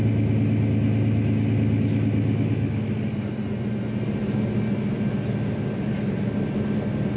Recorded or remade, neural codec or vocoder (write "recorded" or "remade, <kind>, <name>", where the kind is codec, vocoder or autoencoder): recorded